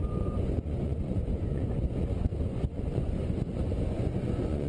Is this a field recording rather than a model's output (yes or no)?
no